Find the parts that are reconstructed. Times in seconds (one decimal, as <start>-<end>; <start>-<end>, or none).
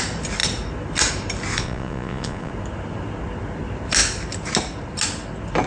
1.5-2.5